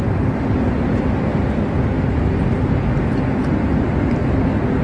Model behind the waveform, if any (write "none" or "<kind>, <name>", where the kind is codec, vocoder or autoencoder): none